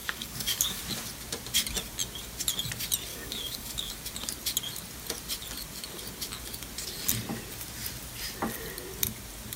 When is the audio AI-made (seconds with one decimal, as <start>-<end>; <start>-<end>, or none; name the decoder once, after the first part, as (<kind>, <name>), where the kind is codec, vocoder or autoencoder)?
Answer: 0.0-0.8 (codec, DAC); 3.1-3.9